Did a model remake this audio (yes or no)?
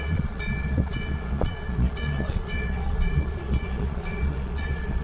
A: yes